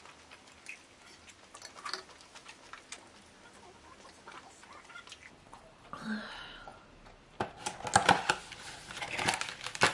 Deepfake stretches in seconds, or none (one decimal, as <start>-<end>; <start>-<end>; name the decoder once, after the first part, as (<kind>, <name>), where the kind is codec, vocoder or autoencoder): none